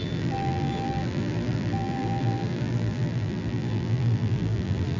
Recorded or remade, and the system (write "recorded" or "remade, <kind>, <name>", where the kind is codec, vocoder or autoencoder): remade, vocoder, BigVGAN v2